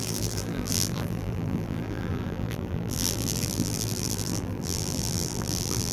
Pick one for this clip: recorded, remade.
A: remade